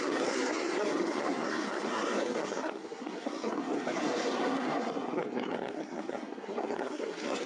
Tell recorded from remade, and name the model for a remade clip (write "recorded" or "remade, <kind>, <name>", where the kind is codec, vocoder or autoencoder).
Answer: remade, codec, SNAC